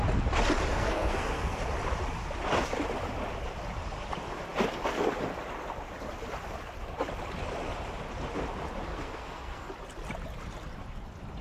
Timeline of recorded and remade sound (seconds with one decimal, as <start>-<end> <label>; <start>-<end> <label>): 0.0-0.7 recorded; 0.7-1.6 remade; 1.6-8.9 recorded; 8.9-9.7 remade; 9.7-11.4 recorded